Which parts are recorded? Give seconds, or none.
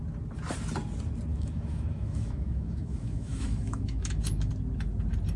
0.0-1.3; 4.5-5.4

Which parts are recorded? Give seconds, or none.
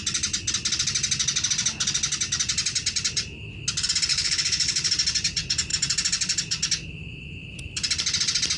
0.0-4.1; 4.9-8.6